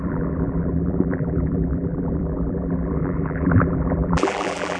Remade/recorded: remade